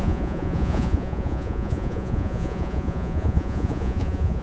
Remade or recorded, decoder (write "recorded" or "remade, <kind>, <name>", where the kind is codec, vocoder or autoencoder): remade, vocoder, Vocos